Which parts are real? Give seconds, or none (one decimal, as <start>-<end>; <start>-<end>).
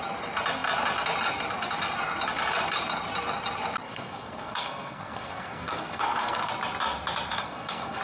0.0-3.8; 6.5-7.3